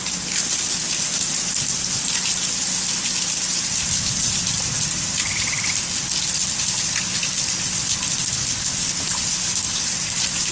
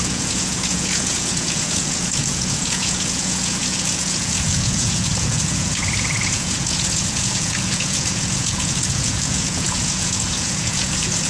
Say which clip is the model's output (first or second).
second